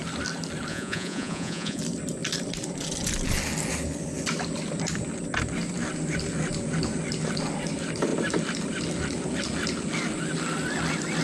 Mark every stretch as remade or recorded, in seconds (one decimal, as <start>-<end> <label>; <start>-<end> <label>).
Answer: 0.0-0.7 recorded; 0.7-1.8 remade; 1.8-11.2 recorded